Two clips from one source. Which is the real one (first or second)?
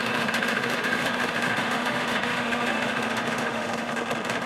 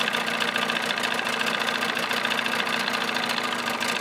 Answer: second